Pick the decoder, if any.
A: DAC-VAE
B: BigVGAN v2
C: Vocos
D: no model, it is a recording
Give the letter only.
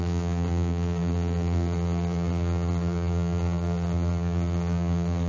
B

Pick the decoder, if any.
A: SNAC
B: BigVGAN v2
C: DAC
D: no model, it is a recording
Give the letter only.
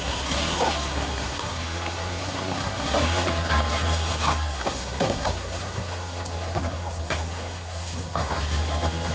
A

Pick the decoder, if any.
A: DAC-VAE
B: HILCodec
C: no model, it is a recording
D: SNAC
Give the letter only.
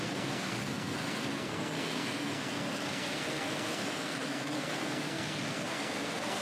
D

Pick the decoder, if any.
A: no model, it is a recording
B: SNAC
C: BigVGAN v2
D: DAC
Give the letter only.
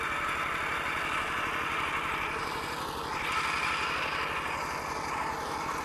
A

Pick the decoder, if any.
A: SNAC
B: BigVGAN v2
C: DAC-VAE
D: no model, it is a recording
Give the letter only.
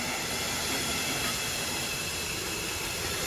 D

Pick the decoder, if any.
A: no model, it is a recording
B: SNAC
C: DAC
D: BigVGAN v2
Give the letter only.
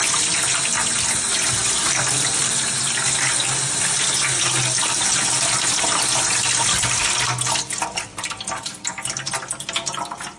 A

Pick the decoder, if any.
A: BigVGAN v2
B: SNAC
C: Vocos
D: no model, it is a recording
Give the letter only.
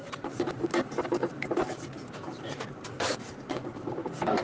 A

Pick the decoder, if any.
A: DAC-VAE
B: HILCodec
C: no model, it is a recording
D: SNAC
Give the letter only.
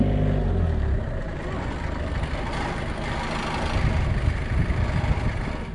C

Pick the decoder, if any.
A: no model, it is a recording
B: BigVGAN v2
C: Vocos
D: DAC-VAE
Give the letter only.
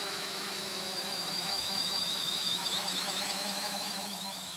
D